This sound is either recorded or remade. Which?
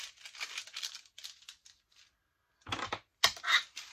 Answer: recorded